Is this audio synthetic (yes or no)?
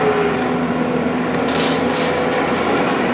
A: no